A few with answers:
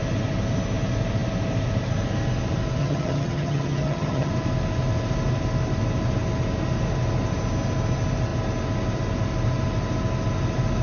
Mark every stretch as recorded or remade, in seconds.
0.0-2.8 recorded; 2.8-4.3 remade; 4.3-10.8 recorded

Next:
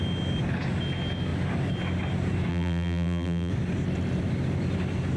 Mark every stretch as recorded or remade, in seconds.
0.0-2.5 recorded; 2.5-3.5 remade; 3.5-5.2 recorded

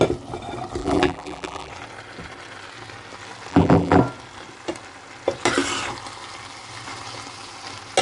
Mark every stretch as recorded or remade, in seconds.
0.0-0.8 recorded; 0.8-1.7 remade; 1.7-3.5 recorded; 3.5-4.0 remade; 4.0-8.0 recorded

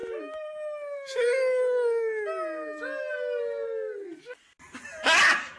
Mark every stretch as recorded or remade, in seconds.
0.0-5.6 recorded

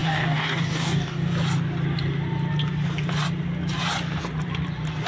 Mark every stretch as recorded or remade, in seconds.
0.0-1.3 remade; 1.3-5.1 recorded